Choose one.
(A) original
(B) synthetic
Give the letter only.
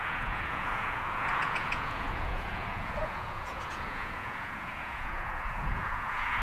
B